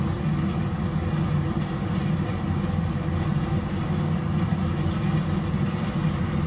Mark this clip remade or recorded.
recorded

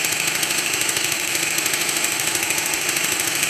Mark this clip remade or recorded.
remade